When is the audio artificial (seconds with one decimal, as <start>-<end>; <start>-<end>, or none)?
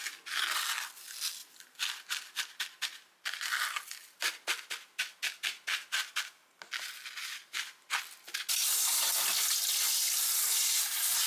none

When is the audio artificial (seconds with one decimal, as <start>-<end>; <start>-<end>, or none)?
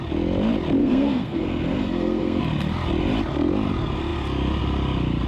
0.8-2.4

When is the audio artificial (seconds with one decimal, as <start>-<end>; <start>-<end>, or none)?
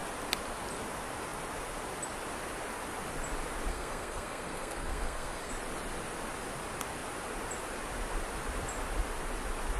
3.7-5.5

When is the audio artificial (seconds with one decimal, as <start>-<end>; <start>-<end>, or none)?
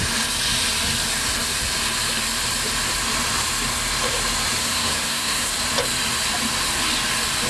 4.6-5.5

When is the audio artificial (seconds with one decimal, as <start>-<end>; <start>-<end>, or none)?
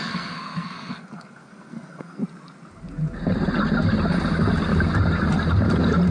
0.0-2.2